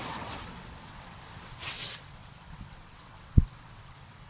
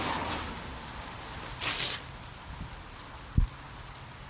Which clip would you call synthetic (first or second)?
first